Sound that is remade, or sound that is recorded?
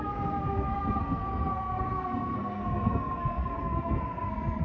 remade